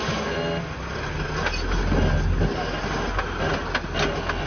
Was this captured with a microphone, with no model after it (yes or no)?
yes